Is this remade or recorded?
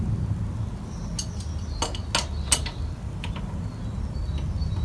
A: recorded